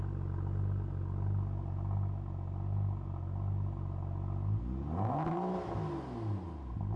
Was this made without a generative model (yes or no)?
yes